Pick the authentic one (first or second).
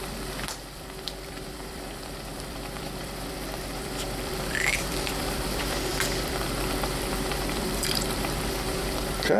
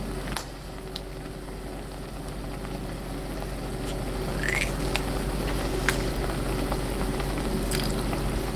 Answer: second